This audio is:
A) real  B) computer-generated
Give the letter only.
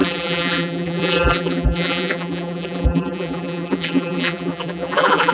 B